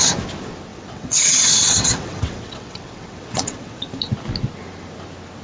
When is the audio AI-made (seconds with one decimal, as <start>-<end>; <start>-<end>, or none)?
0.7-3.9